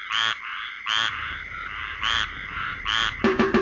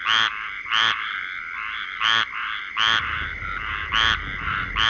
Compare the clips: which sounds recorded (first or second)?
second